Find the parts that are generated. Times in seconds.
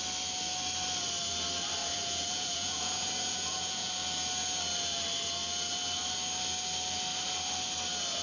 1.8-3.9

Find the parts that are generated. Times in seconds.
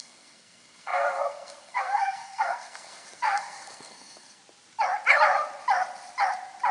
0.0-4.4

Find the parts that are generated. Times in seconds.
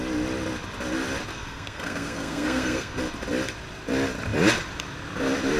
1.3-3.0